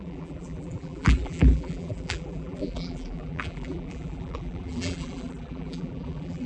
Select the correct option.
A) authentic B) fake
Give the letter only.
B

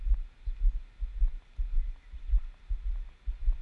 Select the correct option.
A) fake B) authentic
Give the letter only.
B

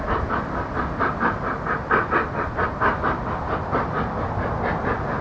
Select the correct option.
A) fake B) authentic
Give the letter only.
B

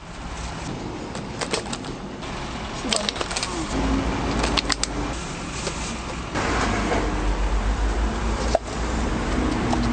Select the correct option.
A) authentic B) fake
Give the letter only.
A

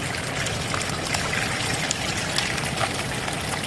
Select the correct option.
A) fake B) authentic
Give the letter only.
B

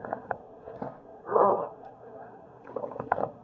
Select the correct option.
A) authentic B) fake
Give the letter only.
B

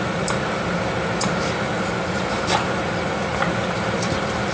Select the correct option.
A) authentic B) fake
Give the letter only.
B